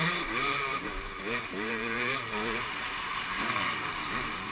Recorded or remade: remade